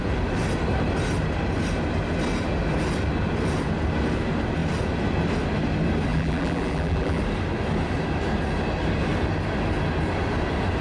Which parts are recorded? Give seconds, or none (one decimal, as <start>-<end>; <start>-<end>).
0.0-6.1; 7.2-10.8